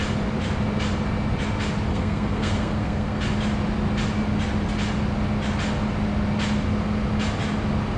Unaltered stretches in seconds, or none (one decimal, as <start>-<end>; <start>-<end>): 0.0-1.9; 3.2-8.0